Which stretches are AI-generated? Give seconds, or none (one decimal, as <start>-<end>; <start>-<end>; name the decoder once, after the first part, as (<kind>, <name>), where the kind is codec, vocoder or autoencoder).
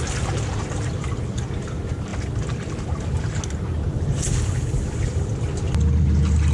none